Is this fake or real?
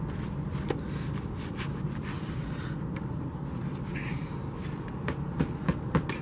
real